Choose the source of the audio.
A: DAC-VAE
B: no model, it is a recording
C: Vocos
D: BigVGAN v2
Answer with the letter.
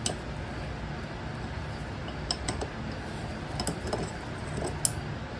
B